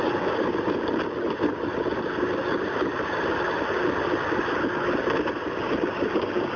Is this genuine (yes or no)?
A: yes